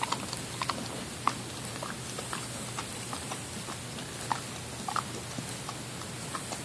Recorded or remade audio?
recorded